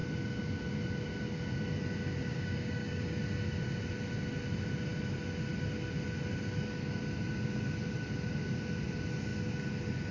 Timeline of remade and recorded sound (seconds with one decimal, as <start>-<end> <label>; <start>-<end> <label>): 0.0-2.3 recorded; 2.3-3.2 remade; 3.2-10.1 recorded